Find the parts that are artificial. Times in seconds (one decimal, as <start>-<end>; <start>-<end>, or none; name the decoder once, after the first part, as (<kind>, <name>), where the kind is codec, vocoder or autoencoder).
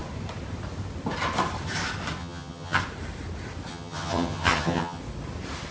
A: 2.2-2.8 (vocoder, HiFi-GAN); 3.7-5.0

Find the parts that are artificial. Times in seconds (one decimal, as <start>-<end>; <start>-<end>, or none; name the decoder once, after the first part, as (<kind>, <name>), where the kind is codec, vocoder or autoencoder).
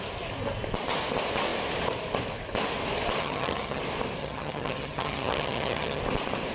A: 3.2-3.8 (vocoder, HiFi-GAN); 4.2-6.0